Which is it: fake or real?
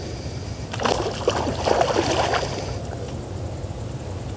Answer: real